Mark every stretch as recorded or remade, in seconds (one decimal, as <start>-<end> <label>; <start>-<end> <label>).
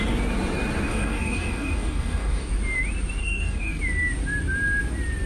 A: 0.0-0.9 recorded; 0.9-2.5 remade; 2.5-3.2 recorded; 3.2-3.8 remade; 3.8-5.3 recorded